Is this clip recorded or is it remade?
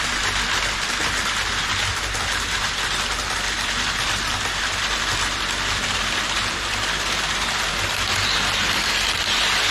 recorded